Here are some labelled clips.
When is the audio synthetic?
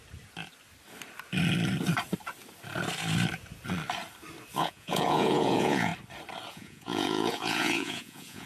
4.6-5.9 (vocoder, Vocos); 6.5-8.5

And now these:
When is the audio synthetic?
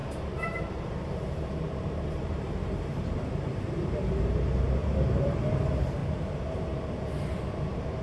0.0-4.0 (vocoder, BigVGAN v2); 4.8-5.4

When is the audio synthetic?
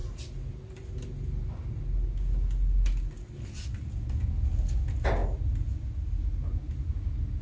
none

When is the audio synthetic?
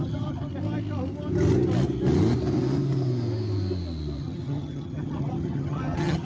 0.0-0.5 (vocoder, HiFi-GAN); 4.2-6.2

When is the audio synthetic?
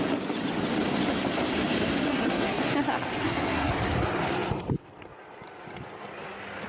2.1-2.6 (codec, SNAC); 3.2-3.7